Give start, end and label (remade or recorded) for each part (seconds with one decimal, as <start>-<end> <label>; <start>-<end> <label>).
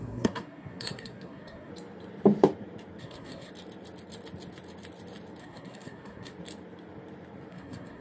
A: 0.0-1.7 remade; 1.7-3.0 recorded; 3.0-3.5 remade; 3.5-5.4 recorded; 5.4-6.3 remade; 6.3-7.5 recorded; 7.5-8.0 remade